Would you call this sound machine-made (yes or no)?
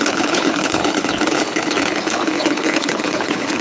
yes